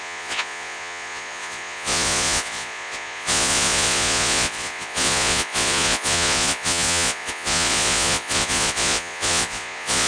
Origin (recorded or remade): remade